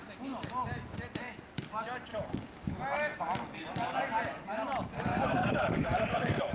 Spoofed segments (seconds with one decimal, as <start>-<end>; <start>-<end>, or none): 2.1-2.7; 5.1-6.5